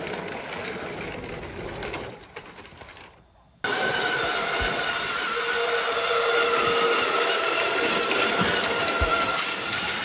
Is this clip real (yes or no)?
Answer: yes